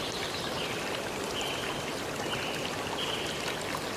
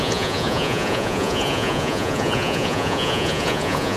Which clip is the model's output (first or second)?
second